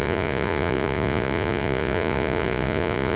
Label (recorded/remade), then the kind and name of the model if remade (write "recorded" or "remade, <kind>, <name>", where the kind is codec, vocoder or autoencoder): remade, vocoder, Vocos